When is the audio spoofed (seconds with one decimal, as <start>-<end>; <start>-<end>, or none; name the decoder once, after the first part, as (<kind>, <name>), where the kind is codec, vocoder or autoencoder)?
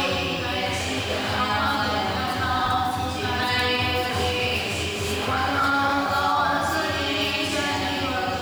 0.8-1.4 (autoencoder, DAC-VAE); 4.1-6.1